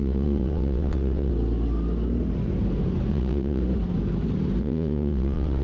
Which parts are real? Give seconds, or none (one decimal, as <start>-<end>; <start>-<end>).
1.3-3.1; 3.6-4.6